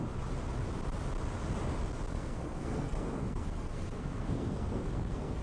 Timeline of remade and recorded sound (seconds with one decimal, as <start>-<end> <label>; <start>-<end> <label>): 0.0-2.1 recorded; 2.1-5.4 remade